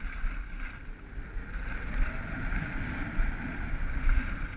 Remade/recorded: recorded